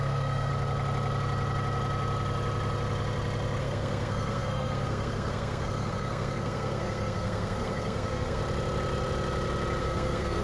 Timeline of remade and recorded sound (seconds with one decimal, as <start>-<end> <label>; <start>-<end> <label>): 0.0-0.5 remade; 0.5-3.6 recorded; 3.6-8.4 remade; 8.4-9.8 recorded; 9.8-10.4 remade